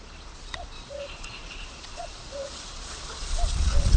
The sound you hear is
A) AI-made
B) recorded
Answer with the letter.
A